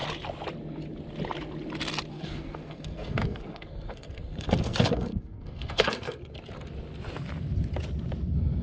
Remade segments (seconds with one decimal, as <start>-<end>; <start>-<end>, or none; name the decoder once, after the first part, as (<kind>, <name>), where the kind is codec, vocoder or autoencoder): 2.1-6.2 (codec, SNAC)